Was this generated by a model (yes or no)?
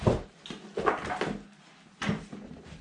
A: no